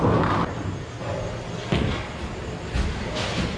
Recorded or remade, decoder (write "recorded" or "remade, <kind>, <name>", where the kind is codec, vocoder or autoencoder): recorded